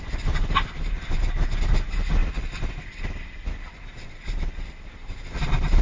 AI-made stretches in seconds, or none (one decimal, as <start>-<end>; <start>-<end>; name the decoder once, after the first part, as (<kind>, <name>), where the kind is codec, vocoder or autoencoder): 2.2-3.5 (vocoder, BigVGAN v2)